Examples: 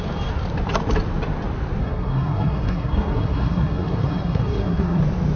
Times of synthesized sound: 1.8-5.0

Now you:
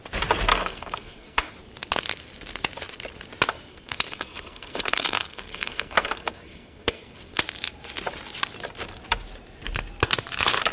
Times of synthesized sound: 0.5-1.5; 3.7-7.4

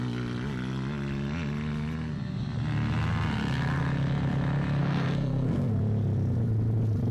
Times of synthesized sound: 4.8-5.8

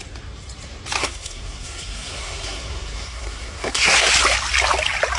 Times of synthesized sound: 1.0-4.1

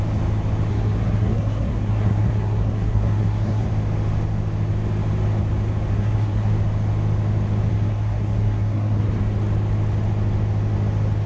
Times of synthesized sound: 0.7-3.7; 5.9-6.5; 7.7-9.2

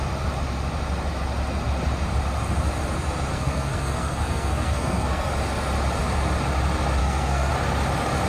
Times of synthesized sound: 3.3-5.3; 7.0-7.5